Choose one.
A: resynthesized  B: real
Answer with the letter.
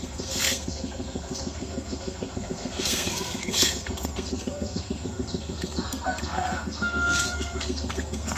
A